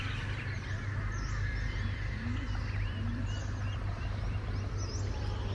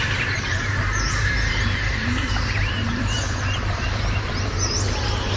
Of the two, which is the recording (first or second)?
first